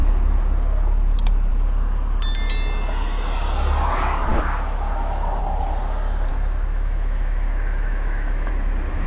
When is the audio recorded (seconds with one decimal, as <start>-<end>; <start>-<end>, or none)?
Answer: 0.0-4.3; 5.4-6.3; 8.5-9.1